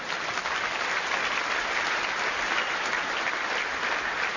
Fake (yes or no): no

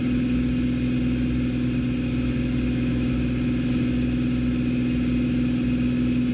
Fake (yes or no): no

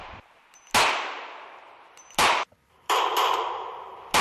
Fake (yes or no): no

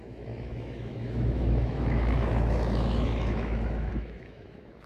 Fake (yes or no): yes